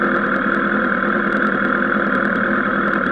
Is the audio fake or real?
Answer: real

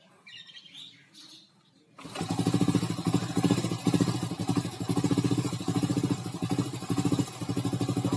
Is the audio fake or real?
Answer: real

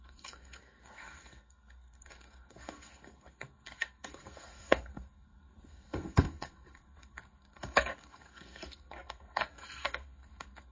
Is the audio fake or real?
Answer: fake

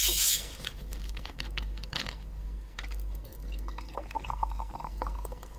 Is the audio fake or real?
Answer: fake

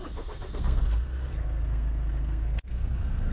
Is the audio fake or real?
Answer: fake